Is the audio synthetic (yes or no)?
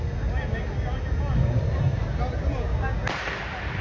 no